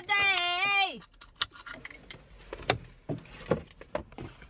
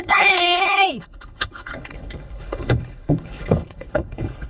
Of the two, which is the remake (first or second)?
second